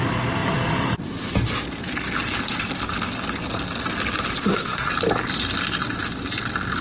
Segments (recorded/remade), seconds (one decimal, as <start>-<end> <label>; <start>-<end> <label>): 0.0-4.4 recorded; 4.4-4.9 remade; 4.9-6.8 recorded